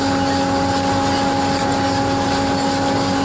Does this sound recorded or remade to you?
recorded